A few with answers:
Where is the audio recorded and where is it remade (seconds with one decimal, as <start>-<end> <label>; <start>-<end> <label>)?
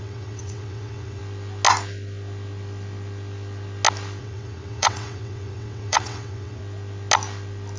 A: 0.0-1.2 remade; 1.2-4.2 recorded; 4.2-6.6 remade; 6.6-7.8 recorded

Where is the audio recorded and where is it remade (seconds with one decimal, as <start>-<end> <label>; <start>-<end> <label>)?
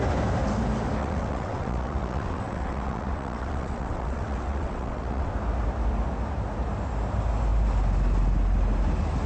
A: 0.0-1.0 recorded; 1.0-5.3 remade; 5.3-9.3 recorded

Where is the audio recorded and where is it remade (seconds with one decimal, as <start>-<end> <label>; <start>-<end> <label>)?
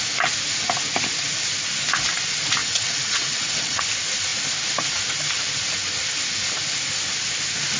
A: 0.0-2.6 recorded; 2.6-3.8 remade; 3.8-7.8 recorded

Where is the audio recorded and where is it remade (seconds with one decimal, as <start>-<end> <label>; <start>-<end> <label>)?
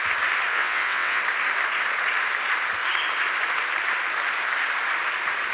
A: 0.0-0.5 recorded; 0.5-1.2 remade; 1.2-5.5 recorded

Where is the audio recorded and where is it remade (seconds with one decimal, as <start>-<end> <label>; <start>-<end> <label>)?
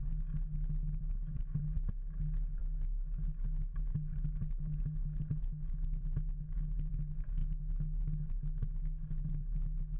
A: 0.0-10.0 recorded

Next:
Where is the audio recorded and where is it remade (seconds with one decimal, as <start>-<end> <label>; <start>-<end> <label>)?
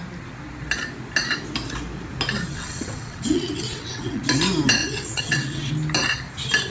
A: 0.0-2.5 recorded; 2.5-4.2 remade; 4.2-4.8 recorded; 4.8-5.7 remade; 5.7-6.7 recorded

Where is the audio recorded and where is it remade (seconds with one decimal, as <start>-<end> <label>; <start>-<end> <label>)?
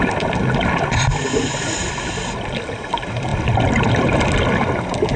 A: 0.0-5.2 recorded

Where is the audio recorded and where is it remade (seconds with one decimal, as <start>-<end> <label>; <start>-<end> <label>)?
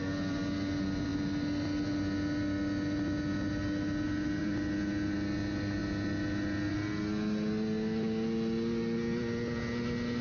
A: 0.0-10.2 recorded